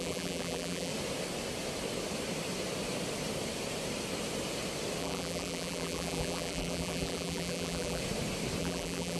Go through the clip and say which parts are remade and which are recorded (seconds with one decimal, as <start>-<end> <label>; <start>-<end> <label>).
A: 0.0-0.9 remade; 0.9-5.0 recorded; 5.0-8.0 remade; 8.0-8.6 recorded; 8.6-9.2 remade